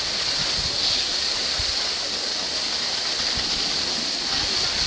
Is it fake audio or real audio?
real